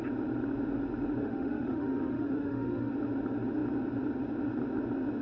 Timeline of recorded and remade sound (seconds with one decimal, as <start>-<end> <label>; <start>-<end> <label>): 0.0-1.2 recorded; 1.2-2.9 remade; 2.9-5.2 recorded